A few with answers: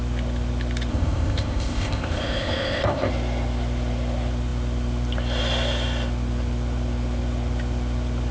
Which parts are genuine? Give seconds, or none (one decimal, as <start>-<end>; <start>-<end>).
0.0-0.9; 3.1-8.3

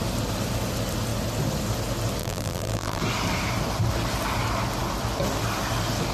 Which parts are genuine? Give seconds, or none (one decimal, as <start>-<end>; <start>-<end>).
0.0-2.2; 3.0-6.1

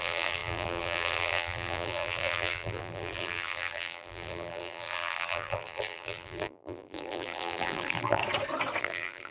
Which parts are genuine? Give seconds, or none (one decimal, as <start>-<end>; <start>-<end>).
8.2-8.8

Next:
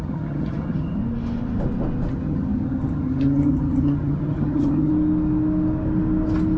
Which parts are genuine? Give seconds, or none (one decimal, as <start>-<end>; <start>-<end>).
1.0-2.1; 4.9-6.6

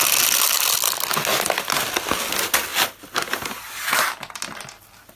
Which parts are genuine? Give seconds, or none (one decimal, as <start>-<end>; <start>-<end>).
0.0-5.2